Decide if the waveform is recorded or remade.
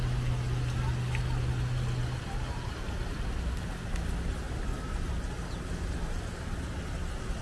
recorded